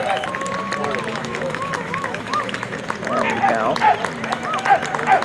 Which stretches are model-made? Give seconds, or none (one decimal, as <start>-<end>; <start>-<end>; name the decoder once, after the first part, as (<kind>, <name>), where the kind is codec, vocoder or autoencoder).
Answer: 1.1-2.8 (autoencoder, DAC-VAE)